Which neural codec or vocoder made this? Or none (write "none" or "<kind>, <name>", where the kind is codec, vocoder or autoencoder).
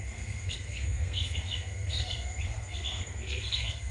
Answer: codec, SNAC